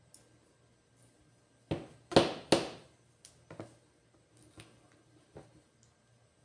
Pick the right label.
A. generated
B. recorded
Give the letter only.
B